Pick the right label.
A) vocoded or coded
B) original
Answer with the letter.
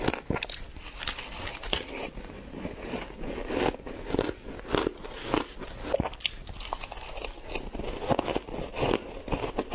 B